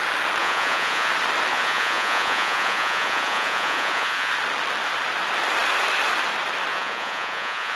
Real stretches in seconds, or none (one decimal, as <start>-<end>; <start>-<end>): 0.0-0.4; 1.1-1.5; 4.3-6.7